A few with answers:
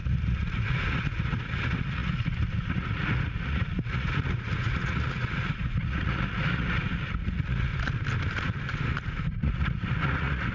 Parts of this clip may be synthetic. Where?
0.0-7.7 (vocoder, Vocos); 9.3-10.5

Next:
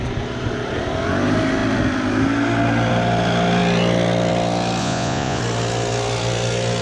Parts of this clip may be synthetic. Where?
4.8-5.4 (vocoder, Vocos)

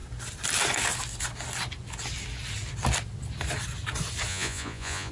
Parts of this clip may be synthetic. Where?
4.3-5.1 (vocoder, Vocos)

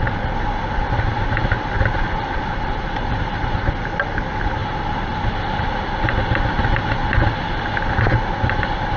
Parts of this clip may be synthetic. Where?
none

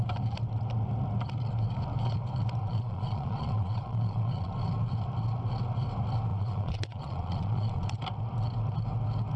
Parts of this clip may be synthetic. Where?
2.6-4.5 (vocoder, Vocos); 6.3-8.0

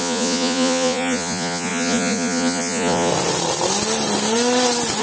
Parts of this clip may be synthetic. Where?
0.0-3.1 (vocoder, Vocos)